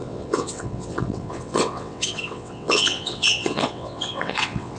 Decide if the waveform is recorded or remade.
remade